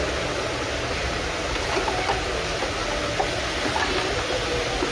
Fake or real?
real